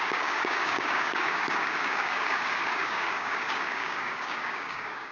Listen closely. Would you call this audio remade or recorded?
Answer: remade